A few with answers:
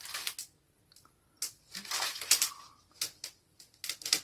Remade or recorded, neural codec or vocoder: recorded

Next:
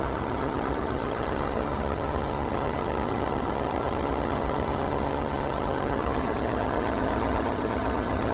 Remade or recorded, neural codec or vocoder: remade, vocoder, HiFi-GAN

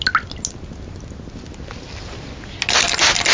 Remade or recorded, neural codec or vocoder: recorded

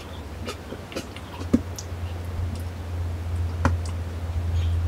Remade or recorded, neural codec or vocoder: recorded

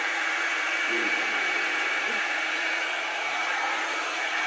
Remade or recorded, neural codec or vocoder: remade, vocoder, Vocos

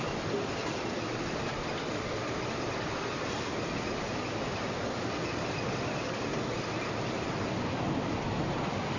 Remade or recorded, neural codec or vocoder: recorded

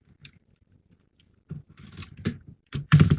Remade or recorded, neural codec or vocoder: remade, vocoder, BigVGAN v2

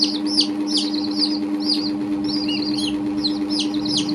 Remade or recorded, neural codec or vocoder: recorded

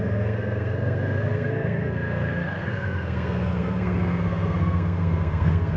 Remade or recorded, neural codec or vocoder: remade, codec, SNAC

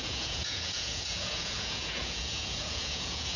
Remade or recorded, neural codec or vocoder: remade, vocoder, Vocos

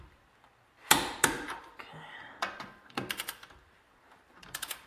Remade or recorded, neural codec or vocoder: remade, vocoder, BigVGAN v2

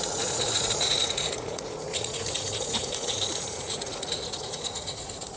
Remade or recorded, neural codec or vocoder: remade, vocoder, Vocos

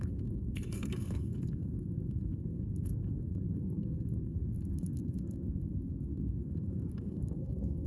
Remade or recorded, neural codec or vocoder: remade, codec, SNAC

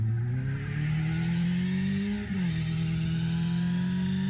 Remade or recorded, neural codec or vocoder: recorded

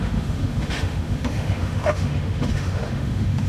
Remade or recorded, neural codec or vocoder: remade, autoencoder, DAC-VAE